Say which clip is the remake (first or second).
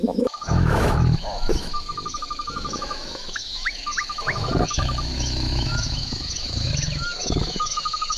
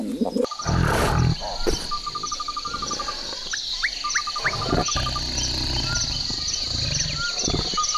first